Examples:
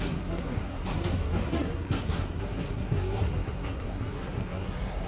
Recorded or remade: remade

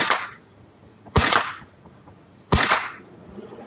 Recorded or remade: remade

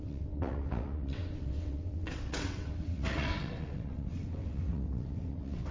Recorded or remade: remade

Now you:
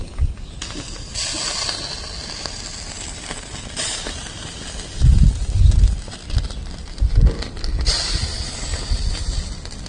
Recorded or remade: recorded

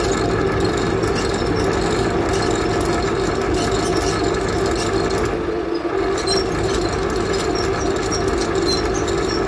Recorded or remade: recorded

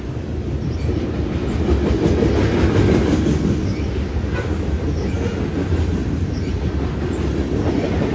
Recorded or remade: recorded